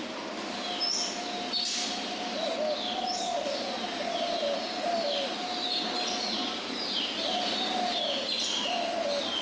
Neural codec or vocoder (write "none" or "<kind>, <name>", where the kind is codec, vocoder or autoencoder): none